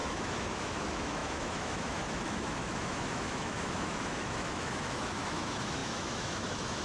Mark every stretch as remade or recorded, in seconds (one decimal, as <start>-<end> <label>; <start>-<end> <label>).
0.0-6.8 remade